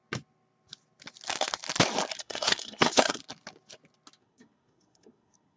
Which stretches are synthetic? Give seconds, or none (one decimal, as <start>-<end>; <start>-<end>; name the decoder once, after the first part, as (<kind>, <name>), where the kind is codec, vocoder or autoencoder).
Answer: 2.2-3.2 (codec, SNAC); 4.2-5.6